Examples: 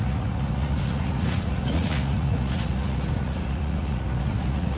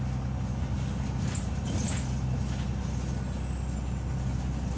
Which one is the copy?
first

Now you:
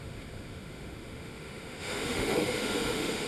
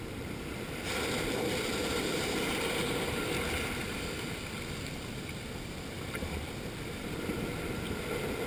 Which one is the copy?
first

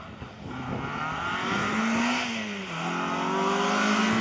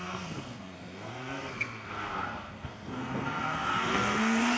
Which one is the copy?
second